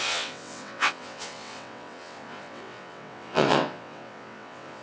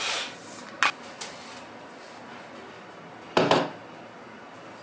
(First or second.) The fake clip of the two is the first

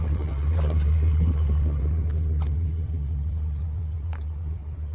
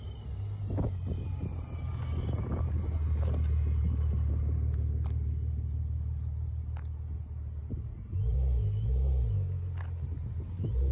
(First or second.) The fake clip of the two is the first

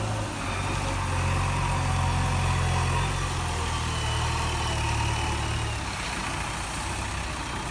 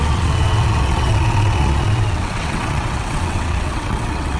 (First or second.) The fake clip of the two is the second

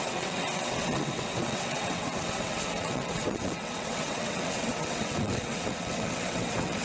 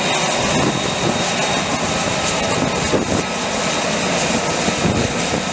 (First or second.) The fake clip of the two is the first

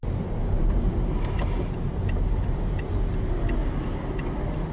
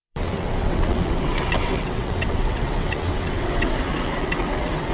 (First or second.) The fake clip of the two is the second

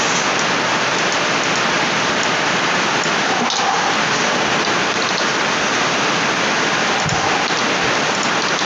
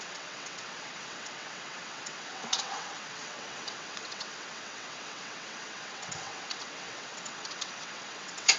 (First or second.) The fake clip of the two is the second